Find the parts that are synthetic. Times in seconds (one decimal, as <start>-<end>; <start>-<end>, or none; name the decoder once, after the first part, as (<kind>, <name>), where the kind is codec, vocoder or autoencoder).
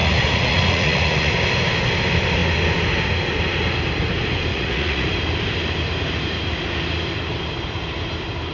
0.0-1.3 (vocoder, Vocos); 4.5-5.1